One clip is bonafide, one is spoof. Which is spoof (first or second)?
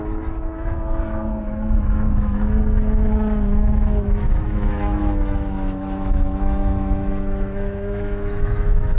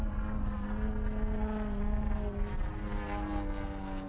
first